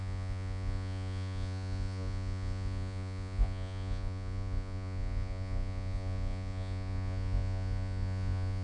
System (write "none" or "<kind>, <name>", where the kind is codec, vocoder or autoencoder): vocoder, Vocos